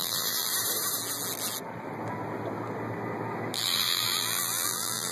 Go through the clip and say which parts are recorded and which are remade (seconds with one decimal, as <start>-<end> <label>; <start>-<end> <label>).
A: 0.0-0.5 remade; 0.5-3.6 recorded; 3.6-5.1 remade